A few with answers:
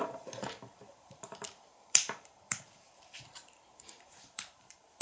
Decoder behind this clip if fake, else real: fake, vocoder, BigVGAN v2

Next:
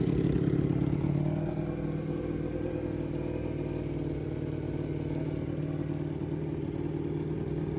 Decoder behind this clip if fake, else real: real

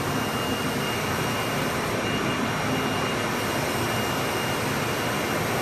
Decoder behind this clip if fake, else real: real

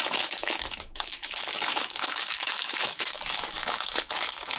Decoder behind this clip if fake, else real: fake, autoencoder, DAC-VAE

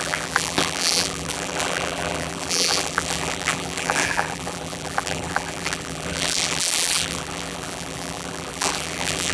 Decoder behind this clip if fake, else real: fake, vocoder, BigVGAN v2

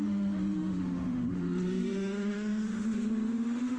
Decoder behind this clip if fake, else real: fake, autoencoder, DAC-VAE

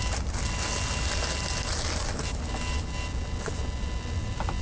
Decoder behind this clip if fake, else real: real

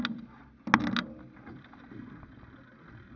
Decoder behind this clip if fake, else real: real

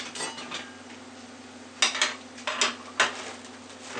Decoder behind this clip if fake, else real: real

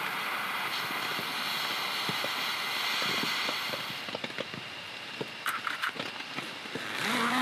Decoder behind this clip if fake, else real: real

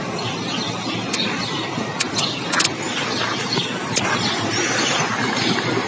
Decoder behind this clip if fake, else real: real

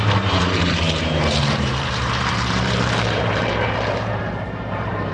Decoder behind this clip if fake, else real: fake, vocoder, BigVGAN v2